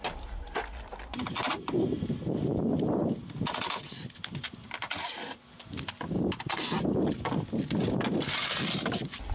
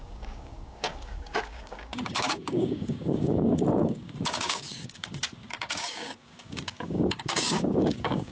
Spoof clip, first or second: second